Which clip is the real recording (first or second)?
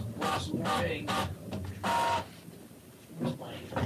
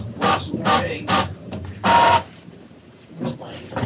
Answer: first